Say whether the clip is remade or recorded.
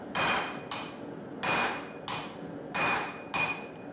recorded